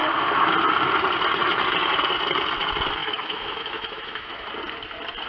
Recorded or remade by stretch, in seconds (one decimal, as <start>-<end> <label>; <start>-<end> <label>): 0.0-3.0 recorded; 3.0-4.5 remade; 4.5-5.3 recorded